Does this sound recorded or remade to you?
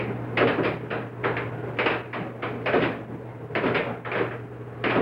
recorded